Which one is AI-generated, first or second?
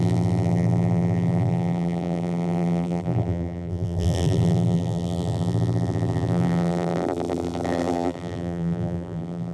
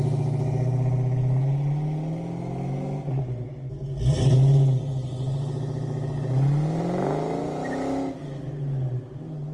first